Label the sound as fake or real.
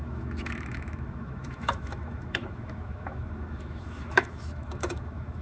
fake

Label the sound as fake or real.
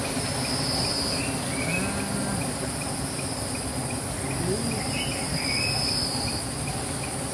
real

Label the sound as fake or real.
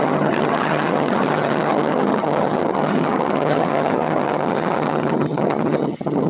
fake